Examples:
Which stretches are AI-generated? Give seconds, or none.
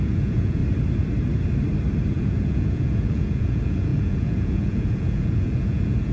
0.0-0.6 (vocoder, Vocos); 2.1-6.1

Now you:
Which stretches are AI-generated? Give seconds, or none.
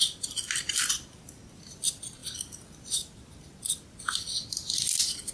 none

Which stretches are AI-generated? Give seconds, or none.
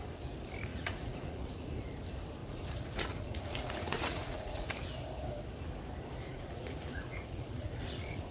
0.7-1.7 (vocoder, Vocos); 2.4-4.7; 6.3-8.3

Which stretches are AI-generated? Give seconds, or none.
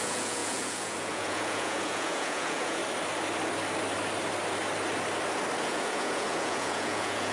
0.0-2.8 (vocoder, Vocos); 5.6-7.3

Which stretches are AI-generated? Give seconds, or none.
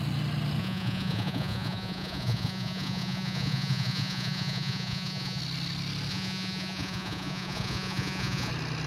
0.6-5.4 (vocoder, Vocos); 6.1-8.5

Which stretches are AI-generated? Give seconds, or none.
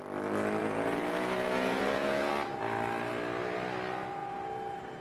0.6-2.3 (vocoder, Vocos)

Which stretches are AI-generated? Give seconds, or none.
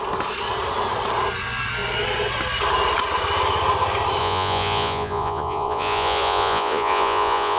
4.2-7.6 (vocoder, Vocos)